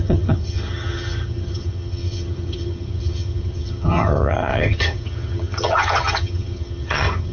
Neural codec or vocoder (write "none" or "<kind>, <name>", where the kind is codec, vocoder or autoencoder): vocoder, HiFi-GAN